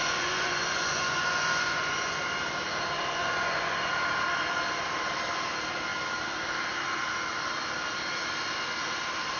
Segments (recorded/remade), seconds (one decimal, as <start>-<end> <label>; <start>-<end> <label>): 0.0-2.2 remade; 2.2-3.2 recorded; 3.2-3.9 remade; 3.9-9.4 recorded

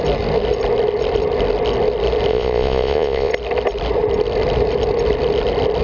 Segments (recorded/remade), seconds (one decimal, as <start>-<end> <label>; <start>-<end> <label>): 0.0-2.3 recorded; 2.3-3.3 remade; 3.3-5.8 recorded

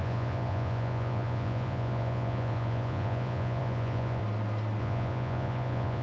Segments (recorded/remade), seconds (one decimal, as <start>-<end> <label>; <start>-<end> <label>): 0.0-4.2 remade; 4.2-4.8 recorded; 4.8-6.0 remade

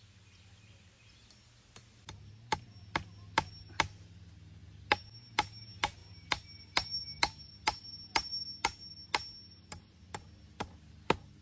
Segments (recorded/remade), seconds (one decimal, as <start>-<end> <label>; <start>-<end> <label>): 0.0-11.4 recorded

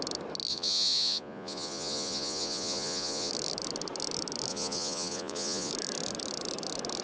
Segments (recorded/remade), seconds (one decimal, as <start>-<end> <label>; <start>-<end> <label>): 0.0-0.5 recorded; 0.5-3.3 remade; 3.3-4.5 recorded; 4.5-5.7 remade; 5.7-7.0 recorded

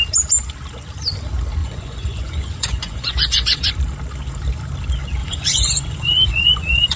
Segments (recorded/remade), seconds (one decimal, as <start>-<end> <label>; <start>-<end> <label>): 0.0-1.6 recorded; 1.6-3.7 remade; 3.7-5.2 recorded; 5.2-7.0 remade

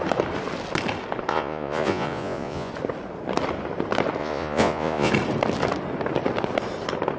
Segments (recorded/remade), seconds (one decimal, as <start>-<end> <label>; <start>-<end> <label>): 0.0-1.3 recorded; 1.3-2.7 remade; 2.7-4.2 recorded; 4.2-5.1 remade; 5.1-7.2 recorded

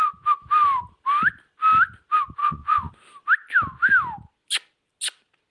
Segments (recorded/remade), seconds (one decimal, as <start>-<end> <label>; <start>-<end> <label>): 0.0-2.4 recorded; 2.4-2.9 remade; 2.9-5.5 recorded